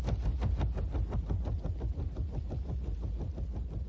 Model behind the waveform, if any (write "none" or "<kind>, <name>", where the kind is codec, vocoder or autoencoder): none